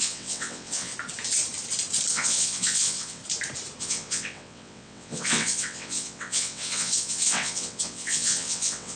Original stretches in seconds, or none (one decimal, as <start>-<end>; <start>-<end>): 0.9-2.1; 3.2-3.8